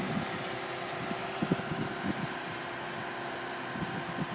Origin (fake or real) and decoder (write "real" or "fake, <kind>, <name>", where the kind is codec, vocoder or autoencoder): real